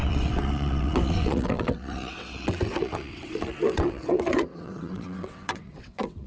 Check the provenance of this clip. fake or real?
fake